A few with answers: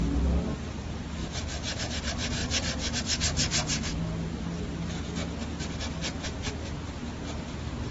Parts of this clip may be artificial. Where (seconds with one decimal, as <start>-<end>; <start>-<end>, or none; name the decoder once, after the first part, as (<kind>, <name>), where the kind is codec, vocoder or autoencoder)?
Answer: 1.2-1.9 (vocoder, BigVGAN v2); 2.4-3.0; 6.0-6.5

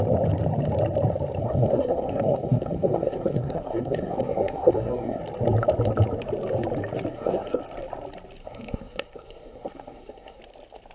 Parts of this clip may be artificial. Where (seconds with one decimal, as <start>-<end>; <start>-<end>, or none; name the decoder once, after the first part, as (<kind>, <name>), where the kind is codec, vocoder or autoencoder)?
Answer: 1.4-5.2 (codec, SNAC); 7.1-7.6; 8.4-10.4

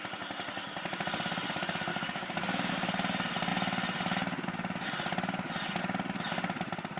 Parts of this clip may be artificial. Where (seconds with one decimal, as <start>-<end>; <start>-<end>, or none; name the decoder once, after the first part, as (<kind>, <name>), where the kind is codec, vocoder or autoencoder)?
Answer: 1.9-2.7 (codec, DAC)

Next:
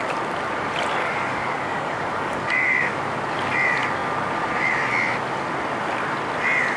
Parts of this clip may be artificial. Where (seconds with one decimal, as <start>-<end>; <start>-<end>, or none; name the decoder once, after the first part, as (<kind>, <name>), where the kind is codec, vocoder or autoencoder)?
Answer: 1.0-3.0 (codec, DAC)

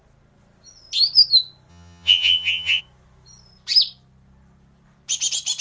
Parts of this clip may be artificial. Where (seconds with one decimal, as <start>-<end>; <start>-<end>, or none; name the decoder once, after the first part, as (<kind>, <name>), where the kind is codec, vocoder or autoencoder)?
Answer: 1.7-2.8 (vocoder, HiFi-GAN)

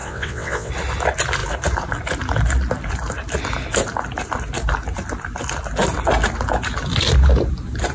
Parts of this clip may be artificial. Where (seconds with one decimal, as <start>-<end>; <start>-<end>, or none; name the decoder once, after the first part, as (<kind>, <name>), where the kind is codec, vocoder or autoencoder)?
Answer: 0.0-0.7 (vocoder, WaveNeXt)

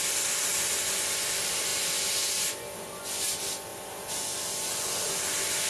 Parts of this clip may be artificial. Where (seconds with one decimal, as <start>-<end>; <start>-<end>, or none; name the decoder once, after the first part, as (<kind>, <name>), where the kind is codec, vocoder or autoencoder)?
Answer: 3.7-4.2 (vocoder, BigVGAN v2)

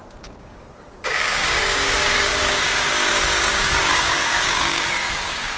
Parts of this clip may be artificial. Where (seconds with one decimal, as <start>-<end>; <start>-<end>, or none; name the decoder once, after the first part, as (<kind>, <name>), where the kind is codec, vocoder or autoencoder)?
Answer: 0.0-5.6 (codec, DAC)